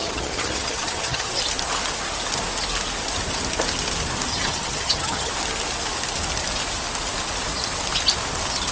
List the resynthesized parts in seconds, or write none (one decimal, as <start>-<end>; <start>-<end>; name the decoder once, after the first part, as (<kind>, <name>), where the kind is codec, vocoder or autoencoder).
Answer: 0.0-1.4 (vocoder, HiFi-GAN); 4.3-5.3